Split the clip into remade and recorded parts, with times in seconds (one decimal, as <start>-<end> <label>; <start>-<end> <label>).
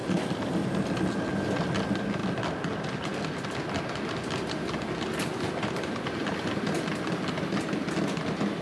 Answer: 0.0-8.6 recorded